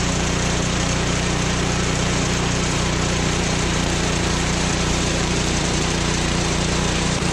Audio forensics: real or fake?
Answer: fake